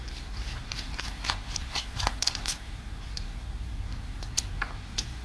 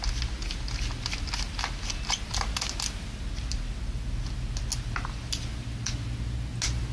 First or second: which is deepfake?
first